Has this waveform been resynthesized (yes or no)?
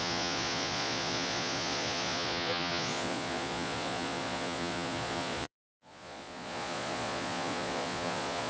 yes